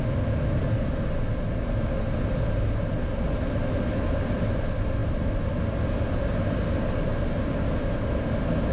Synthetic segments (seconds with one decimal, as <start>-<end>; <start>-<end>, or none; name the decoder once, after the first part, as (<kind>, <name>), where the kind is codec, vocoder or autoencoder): none